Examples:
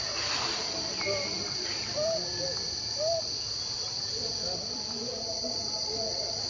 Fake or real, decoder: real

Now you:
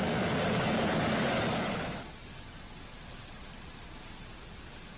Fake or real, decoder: real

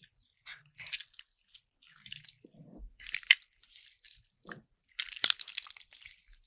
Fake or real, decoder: real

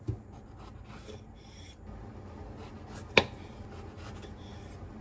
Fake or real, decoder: real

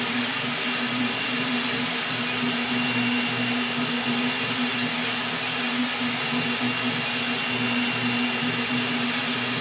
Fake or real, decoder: real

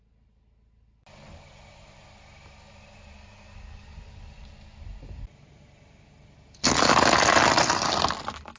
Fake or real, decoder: real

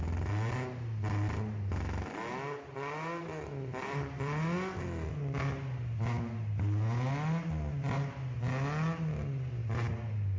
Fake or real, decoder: real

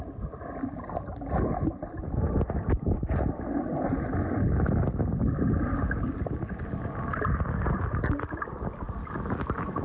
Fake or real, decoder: real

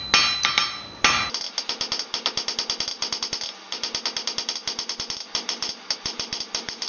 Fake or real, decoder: real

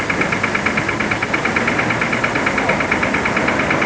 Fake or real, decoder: real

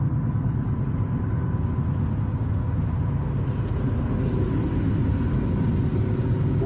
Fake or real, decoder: real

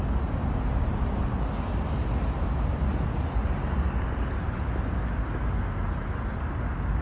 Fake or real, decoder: real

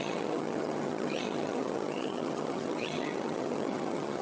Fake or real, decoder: fake, vocoder, HiFi-GAN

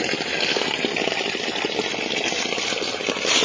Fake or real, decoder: real